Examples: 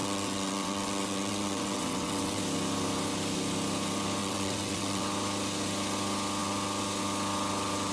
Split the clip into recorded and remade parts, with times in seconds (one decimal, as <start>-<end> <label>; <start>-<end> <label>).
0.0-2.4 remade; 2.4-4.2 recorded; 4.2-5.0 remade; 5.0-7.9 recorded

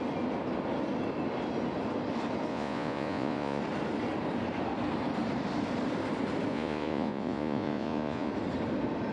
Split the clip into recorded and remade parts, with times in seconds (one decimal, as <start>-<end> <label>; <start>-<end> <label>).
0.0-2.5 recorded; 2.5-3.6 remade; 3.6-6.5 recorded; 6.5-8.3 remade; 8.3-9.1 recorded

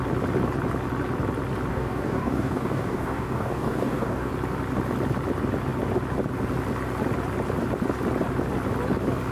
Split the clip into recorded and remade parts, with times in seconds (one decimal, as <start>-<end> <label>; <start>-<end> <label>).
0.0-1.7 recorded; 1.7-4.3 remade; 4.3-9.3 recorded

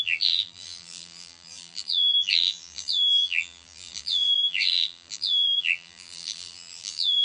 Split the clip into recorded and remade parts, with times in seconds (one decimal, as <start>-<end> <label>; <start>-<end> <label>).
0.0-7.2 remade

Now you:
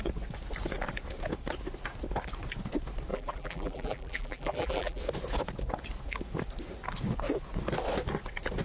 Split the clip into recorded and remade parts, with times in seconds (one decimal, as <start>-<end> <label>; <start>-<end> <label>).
0.0-3.1 recorded; 3.1-5.0 remade; 5.0-8.6 recorded